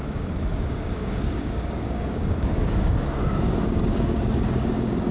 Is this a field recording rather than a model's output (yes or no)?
no